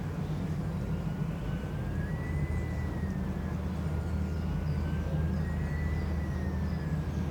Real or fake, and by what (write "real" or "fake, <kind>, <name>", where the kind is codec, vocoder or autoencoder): real